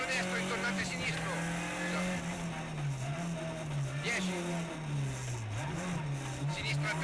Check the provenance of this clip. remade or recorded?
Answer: recorded